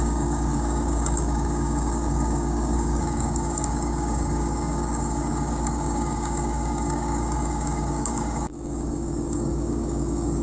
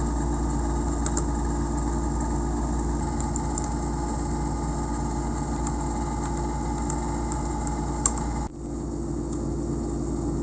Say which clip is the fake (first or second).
first